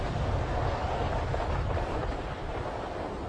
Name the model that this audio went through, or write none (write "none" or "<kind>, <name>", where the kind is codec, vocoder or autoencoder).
vocoder, BigVGAN v2